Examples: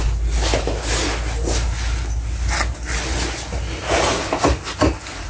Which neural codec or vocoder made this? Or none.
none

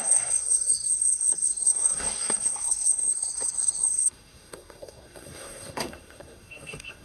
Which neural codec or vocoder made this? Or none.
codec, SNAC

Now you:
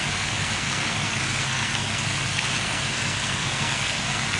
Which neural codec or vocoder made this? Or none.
codec, SNAC